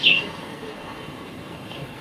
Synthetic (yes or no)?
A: yes